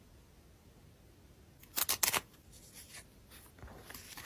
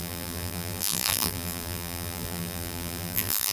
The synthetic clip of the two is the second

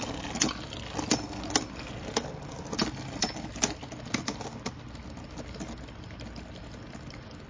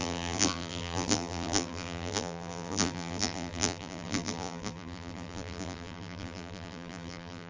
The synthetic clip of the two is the second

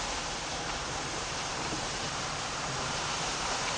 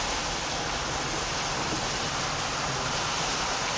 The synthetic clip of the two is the first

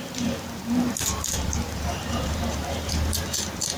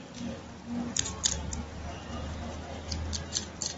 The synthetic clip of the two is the first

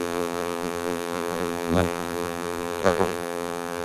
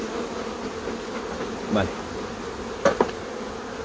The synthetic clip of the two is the first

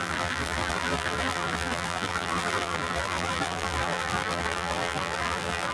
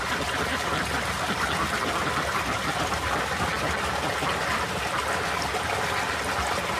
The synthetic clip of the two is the first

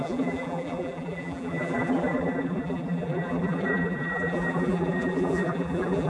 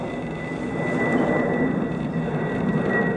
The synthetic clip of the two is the first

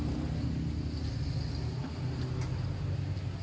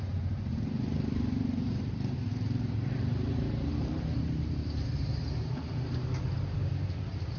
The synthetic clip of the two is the second